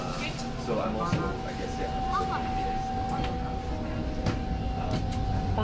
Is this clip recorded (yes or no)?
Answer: yes